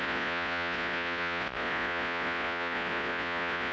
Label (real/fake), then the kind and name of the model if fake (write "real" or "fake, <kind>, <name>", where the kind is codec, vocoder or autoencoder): fake, vocoder, Vocos